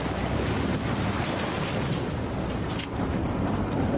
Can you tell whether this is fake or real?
real